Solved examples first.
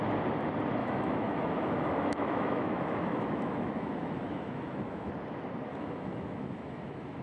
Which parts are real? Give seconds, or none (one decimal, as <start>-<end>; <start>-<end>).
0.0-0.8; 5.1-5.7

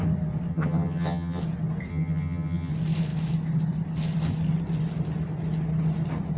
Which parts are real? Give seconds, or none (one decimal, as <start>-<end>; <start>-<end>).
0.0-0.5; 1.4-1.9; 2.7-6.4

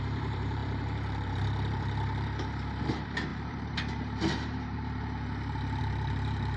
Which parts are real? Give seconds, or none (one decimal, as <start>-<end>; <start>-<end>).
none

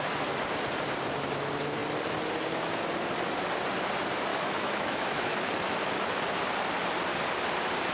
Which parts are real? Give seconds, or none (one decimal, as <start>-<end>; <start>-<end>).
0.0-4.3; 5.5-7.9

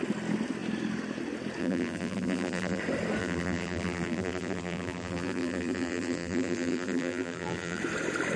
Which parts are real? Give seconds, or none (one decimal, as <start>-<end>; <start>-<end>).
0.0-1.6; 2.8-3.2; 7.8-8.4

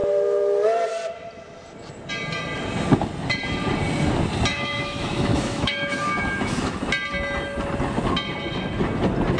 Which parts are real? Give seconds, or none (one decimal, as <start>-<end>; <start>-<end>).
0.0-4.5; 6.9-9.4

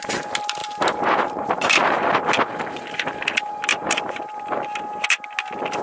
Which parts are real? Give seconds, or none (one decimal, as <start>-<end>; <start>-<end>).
0.0-0.6; 1.8-3.7; 4.4-5.8

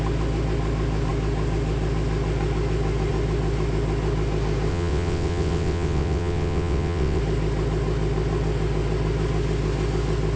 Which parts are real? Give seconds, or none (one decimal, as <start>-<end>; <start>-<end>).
0.0-4.7; 7.2-10.4